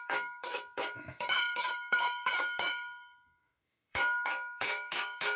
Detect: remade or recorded remade